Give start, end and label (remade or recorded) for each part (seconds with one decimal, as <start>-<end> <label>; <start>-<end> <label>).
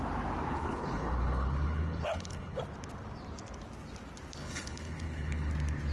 0.0-0.5 recorded; 0.5-2.6 remade; 2.6-4.4 recorded; 4.4-5.5 remade; 5.5-5.9 recorded